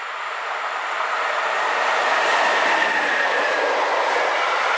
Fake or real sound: real